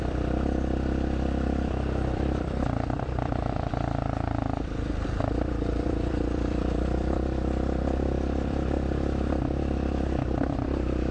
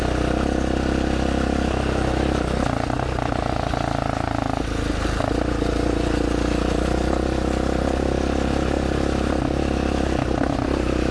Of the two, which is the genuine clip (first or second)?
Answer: second